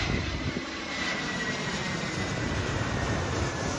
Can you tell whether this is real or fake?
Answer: fake